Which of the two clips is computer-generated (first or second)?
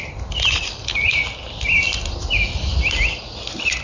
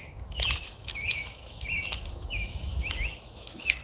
second